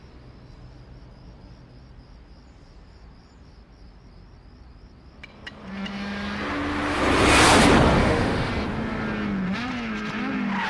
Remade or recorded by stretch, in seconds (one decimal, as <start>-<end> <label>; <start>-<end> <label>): 0.0-8.0 recorded; 8.0-8.5 remade; 8.5-10.7 recorded